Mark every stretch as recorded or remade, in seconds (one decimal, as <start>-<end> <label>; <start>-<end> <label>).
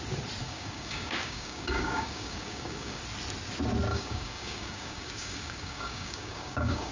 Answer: 0.0-0.4 recorded; 0.4-3.0 remade; 3.0-3.9 recorded; 3.9-6.9 remade